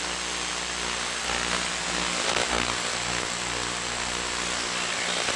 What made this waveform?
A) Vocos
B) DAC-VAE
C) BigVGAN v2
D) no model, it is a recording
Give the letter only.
D